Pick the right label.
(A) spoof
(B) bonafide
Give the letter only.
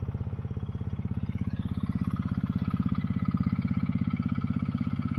B